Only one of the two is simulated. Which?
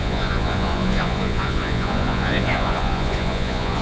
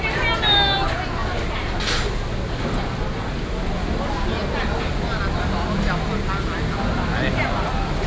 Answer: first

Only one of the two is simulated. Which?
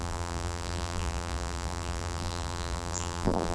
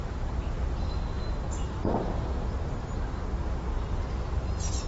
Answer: first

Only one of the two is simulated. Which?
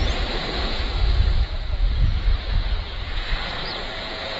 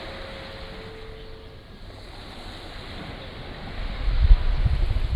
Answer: first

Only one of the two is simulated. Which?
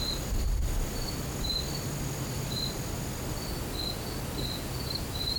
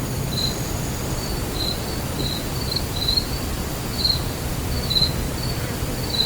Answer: second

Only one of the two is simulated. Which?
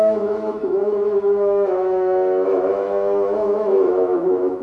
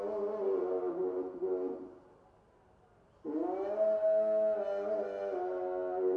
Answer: first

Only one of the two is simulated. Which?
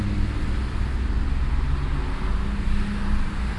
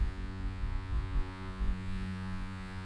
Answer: second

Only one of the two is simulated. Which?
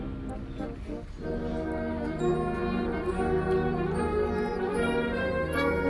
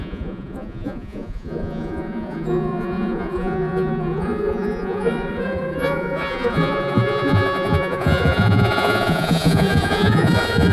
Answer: second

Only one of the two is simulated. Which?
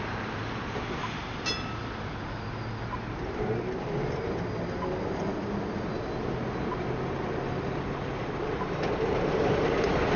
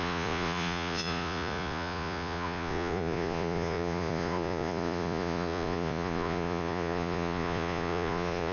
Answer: second